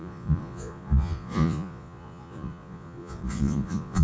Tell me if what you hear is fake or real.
fake